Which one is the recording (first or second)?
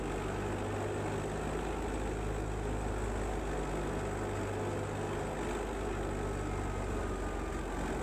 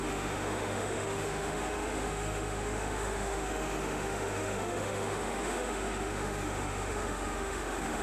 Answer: first